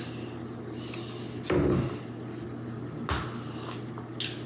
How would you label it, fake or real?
real